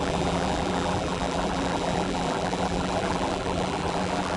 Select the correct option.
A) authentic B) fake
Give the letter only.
B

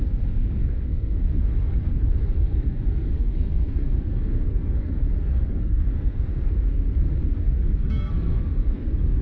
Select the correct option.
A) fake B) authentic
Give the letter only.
A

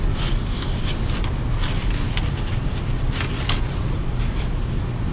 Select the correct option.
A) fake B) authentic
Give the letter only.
B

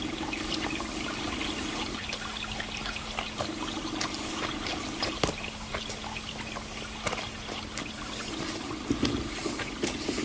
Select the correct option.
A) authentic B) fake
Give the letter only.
A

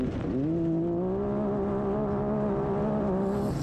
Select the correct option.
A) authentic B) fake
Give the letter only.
A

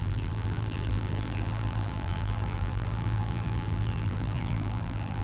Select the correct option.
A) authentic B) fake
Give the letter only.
B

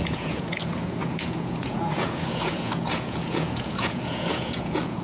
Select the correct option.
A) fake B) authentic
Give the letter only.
A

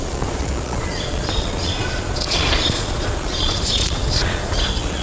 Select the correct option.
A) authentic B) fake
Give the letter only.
B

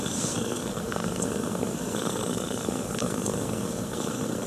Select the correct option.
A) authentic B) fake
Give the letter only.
B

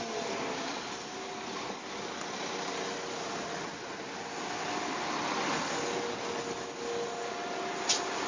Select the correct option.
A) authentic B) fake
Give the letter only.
A